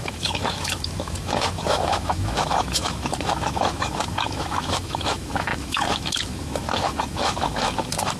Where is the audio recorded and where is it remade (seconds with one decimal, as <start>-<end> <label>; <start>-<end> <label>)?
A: 0.0-8.2 remade